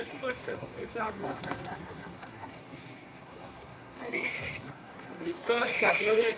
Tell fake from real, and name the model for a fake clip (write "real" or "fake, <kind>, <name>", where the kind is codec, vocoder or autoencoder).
fake, codec, SNAC